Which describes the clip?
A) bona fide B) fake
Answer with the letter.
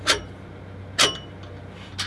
A